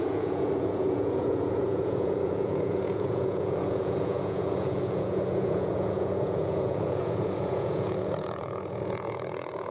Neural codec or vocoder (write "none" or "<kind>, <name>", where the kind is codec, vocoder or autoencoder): vocoder, Vocos